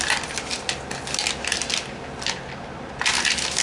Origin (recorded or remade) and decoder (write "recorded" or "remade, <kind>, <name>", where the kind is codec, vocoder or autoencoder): recorded